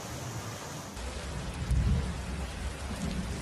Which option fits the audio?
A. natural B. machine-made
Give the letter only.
A